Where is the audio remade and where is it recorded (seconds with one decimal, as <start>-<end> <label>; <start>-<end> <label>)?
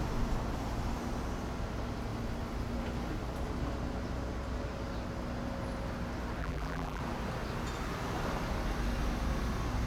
0.0-6.4 recorded; 6.4-7.0 remade; 7.0-9.9 recorded